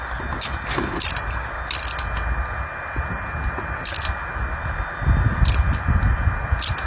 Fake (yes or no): no